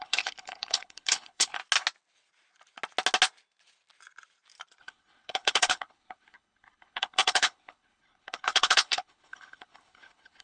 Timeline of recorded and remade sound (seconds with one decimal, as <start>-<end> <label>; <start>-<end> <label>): 0.0-1.6 remade; 1.6-4.8 recorded; 4.8-10.4 remade